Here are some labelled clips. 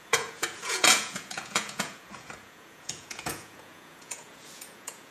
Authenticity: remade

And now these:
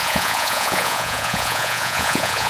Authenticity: remade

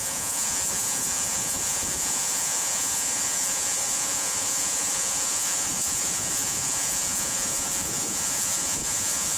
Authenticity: remade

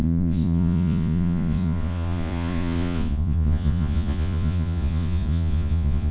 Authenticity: remade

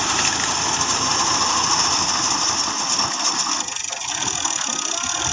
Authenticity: recorded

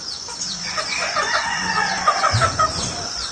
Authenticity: remade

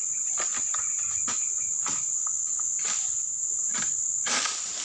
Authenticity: recorded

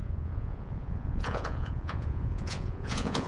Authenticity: remade